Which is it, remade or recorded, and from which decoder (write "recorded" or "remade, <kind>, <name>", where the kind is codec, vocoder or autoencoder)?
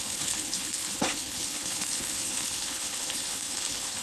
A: remade, codec, HILCodec